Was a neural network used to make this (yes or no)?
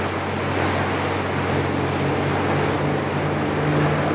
no